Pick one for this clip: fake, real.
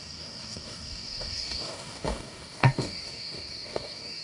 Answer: fake